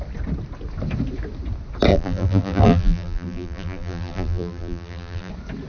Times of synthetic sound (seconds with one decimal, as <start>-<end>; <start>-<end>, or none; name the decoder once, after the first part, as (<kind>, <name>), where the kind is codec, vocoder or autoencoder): 1.9-5.3 (vocoder, BigVGAN v2)